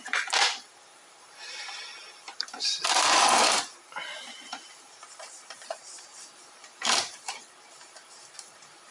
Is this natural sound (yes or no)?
no